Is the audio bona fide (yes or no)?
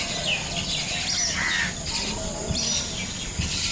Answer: yes